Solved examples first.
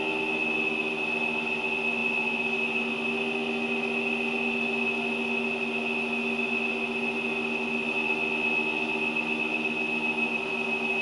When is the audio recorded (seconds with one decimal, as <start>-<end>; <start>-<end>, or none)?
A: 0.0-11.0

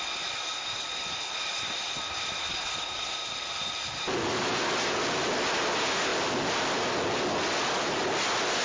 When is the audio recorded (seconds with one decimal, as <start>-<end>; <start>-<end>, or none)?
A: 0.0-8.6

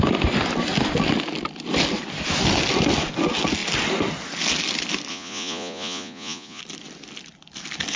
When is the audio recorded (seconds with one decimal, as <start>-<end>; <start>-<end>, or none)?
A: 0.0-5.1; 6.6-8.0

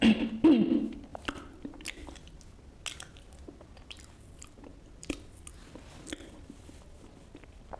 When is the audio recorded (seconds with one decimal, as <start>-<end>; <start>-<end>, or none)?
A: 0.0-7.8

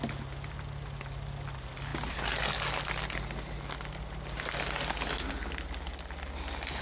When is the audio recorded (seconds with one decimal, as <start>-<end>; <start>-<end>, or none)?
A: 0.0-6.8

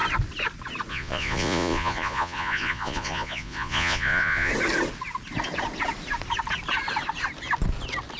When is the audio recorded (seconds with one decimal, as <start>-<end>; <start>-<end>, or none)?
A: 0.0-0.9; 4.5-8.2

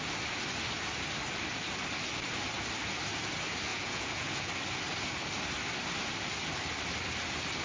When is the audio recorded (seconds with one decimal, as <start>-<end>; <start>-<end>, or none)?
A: 0.0-3.7; 4.5-7.6